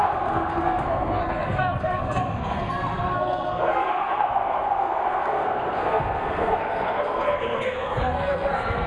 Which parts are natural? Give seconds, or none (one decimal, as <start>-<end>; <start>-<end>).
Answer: none